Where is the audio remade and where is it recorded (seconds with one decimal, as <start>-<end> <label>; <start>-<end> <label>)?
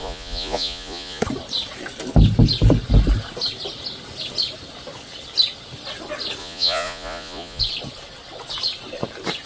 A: 0.0-1.2 remade; 1.2-6.4 recorded; 6.4-7.6 remade; 7.6-9.5 recorded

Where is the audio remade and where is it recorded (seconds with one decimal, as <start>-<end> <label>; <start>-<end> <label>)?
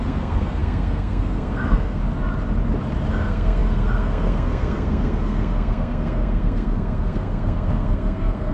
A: 0.0-2.0 remade; 2.0-3.1 recorded; 3.1-8.5 remade